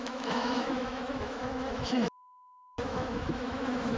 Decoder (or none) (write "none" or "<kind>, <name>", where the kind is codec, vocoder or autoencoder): autoencoder, DAC-VAE